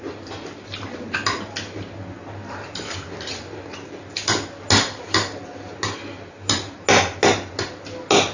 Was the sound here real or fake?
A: real